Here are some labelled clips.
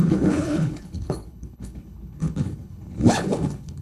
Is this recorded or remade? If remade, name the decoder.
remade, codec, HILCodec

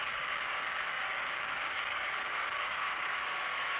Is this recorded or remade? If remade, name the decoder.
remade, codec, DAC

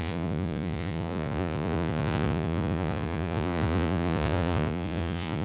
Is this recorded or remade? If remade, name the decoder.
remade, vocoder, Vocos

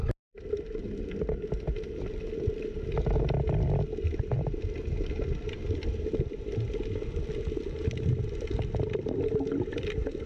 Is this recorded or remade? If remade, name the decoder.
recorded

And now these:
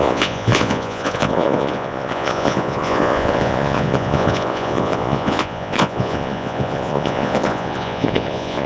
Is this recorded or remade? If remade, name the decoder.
remade, vocoder, Vocos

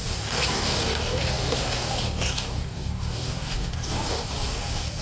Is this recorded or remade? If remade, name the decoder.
remade, codec, DAC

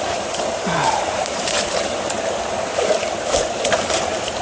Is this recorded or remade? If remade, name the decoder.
remade, vocoder, BigVGAN v2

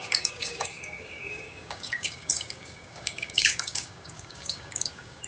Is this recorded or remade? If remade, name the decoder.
remade, codec, DAC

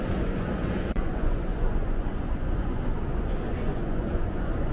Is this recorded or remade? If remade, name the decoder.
remade, vocoder, Vocos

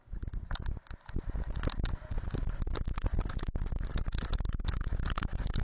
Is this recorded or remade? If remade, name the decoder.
recorded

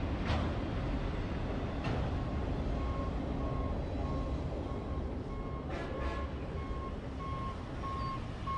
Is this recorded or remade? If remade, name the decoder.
recorded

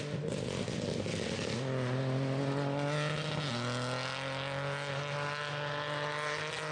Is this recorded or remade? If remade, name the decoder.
recorded